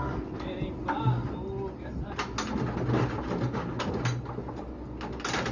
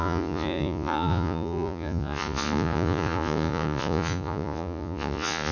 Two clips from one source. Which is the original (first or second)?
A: first